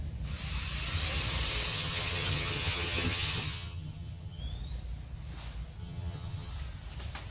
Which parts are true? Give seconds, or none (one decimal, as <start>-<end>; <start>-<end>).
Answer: 0.0-1.7; 4.4-5.8; 6.5-7.3